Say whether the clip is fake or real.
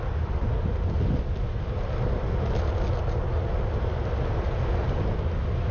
real